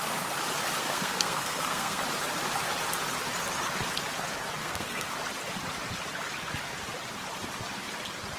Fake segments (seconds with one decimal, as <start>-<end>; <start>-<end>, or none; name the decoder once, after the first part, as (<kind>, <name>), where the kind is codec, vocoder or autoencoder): 0.8-2.0 (codec, SNAC); 4.6-5.1